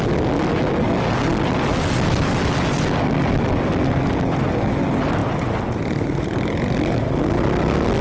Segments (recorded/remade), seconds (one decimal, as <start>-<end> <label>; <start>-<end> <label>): 0.0-8.0 recorded